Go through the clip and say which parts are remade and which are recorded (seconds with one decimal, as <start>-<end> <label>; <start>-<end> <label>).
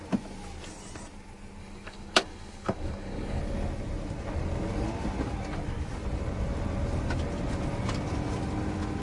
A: 0.0-1.6 recorded; 1.6-3.4 remade; 3.4-9.0 recorded